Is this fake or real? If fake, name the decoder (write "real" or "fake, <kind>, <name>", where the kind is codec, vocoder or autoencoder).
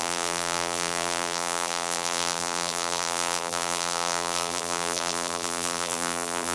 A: fake, vocoder, BigVGAN v2